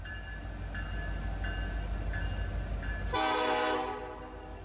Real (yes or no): yes